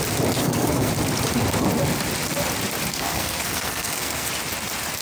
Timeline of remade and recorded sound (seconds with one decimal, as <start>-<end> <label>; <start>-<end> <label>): 0.0-0.4 recorded; 0.4-0.9 remade; 0.9-2.9 recorded; 2.9-4.3 remade; 4.3-5.0 recorded